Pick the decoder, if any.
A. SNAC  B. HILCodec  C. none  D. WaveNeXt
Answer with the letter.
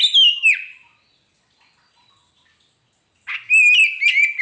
C